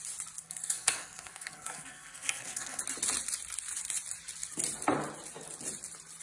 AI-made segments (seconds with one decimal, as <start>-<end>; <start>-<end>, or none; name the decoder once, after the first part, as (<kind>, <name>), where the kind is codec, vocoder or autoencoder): 0.4-2.8 (codec, SNAC)